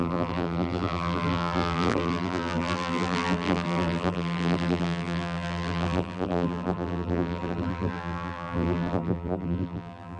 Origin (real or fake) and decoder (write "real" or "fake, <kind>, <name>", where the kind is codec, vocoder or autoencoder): fake, vocoder, BigVGAN v2